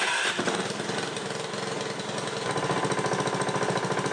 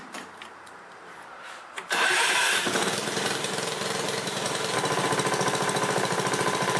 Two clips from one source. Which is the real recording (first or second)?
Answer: first